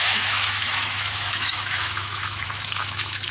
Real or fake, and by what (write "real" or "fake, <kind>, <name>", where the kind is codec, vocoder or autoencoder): fake, autoencoder, DAC-VAE